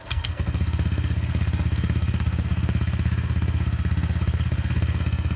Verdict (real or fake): fake